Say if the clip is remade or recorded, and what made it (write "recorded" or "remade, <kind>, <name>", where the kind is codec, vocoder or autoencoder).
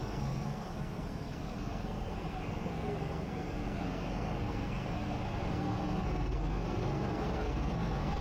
remade, codec, SNAC